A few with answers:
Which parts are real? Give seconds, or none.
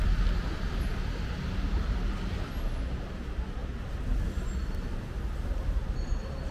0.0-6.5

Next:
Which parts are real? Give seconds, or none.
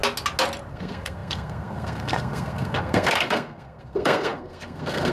0.0-0.7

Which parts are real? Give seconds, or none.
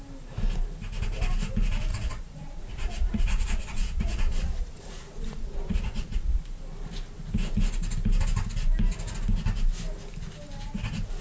0.0-1.9; 6.4-11.2